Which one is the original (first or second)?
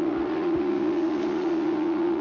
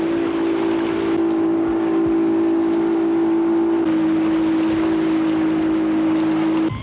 second